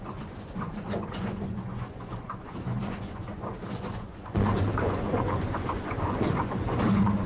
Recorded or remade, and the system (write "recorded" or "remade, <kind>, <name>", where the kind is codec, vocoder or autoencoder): remade, vocoder, Vocos